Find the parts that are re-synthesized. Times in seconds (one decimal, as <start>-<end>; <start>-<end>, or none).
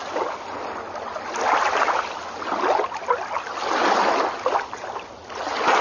none